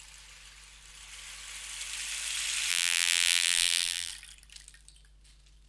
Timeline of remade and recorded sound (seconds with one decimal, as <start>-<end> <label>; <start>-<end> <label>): 0.0-2.7 recorded; 2.7-4.1 remade; 4.1-5.7 recorded